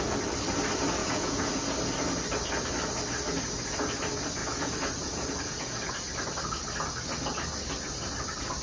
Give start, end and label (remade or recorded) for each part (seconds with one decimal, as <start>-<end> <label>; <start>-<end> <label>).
0.0-1.0 recorded; 1.0-1.6 remade; 1.6-4.4 recorded; 4.4-5.9 remade; 5.9-8.6 recorded